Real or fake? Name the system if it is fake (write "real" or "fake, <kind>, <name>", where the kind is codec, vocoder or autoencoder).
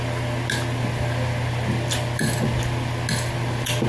real